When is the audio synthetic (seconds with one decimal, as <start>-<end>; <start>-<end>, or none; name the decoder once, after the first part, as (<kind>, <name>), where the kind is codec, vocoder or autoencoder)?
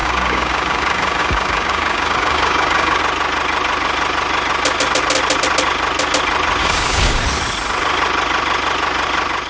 0.0-3.0 (codec, DAC); 6.6-7.2